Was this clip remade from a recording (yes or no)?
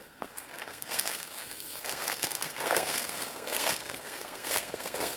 yes